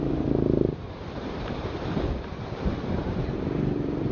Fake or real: fake